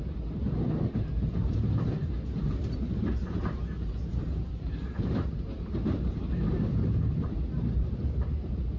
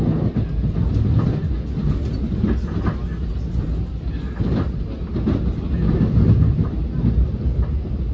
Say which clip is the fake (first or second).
first